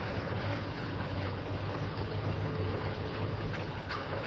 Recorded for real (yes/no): no